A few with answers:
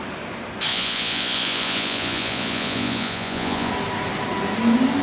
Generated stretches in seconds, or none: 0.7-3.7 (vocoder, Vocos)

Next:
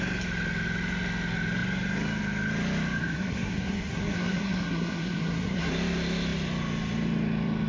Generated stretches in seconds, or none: 3.0-5.7 (codec, SNAC)